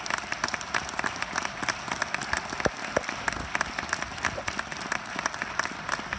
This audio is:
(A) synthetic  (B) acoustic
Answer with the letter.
B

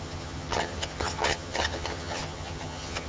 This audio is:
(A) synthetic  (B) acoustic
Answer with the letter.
A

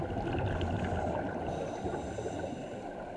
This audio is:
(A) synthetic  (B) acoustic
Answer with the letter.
B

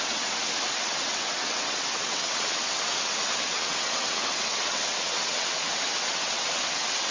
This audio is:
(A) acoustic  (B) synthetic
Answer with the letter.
B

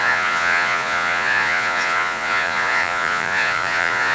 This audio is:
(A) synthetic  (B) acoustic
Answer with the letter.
A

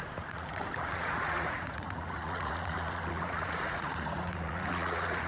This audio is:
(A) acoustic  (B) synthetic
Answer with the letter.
B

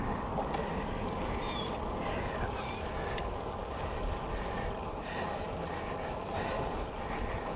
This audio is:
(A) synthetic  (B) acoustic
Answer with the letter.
B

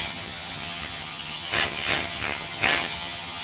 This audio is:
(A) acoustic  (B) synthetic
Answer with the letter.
B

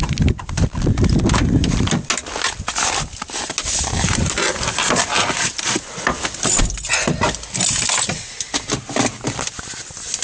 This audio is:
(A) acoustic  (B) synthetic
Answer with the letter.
A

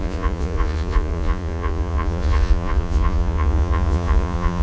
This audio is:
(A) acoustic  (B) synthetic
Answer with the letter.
B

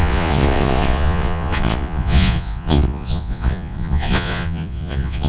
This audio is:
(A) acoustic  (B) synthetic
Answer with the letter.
B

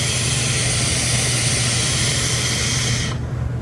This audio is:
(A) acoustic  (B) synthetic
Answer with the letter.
A